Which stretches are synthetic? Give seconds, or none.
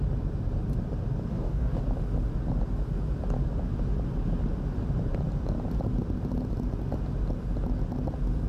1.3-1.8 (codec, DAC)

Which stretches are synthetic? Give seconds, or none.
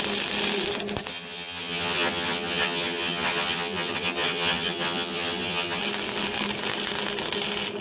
1.1-5.8 (vocoder, HiFi-GAN)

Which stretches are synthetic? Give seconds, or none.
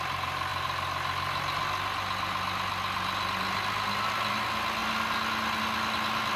none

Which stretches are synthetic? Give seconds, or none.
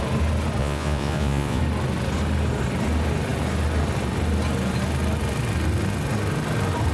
0.6-1.6 (vocoder, Vocos)